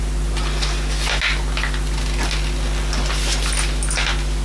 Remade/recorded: recorded